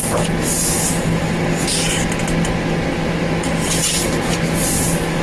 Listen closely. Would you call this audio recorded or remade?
recorded